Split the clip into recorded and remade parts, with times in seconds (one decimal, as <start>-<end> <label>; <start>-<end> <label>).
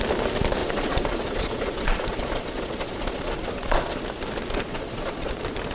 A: 0.0-0.6 recorded; 0.6-4.0 remade; 4.0-4.7 recorded; 4.7-5.3 remade; 5.3-5.7 recorded